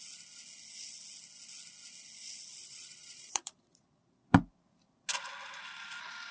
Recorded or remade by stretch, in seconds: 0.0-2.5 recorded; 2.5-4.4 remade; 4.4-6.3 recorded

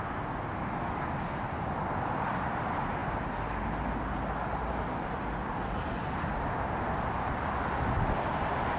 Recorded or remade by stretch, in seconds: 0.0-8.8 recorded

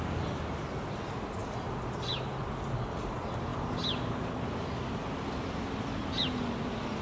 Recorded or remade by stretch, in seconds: 0.0-7.0 recorded

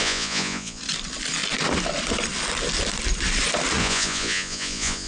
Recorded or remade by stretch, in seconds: 0.0-0.8 remade; 0.8-3.8 recorded; 3.8-5.1 remade

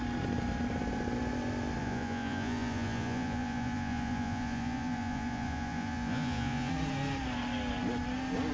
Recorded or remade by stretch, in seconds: 0.0-1.8 recorded; 1.8-6.7 remade; 6.7-8.5 recorded